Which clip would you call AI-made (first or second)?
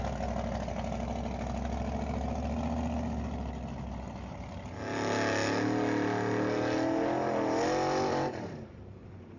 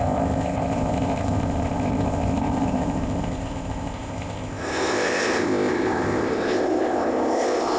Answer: second